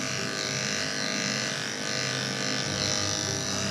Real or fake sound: real